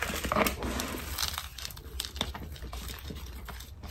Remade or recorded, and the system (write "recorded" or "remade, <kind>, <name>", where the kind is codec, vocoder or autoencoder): recorded